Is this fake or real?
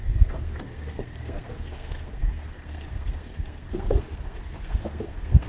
fake